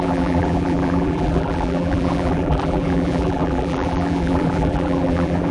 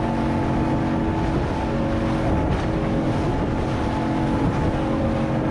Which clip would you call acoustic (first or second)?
second